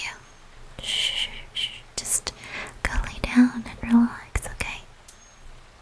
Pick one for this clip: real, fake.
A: real